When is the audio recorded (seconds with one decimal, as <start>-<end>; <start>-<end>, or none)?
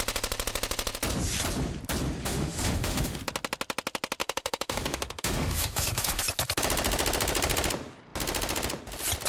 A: 0.0-2.2; 3.2-4.2; 6.2-9.3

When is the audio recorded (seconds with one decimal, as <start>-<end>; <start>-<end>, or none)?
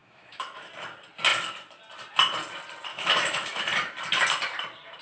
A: 0.7-2.9; 3.6-5.0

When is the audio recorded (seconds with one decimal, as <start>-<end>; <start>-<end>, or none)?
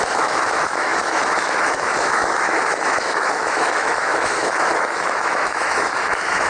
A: none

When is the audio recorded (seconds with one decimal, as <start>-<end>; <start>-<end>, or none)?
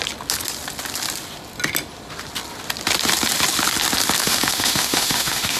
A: 0.0-4.2